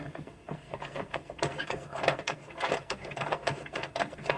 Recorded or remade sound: remade